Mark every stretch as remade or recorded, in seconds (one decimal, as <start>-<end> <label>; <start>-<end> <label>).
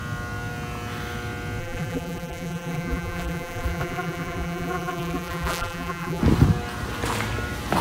0.0-1.6 recorded; 1.6-6.2 remade; 6.2-7.8 recorded